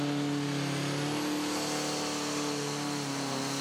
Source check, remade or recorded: recorded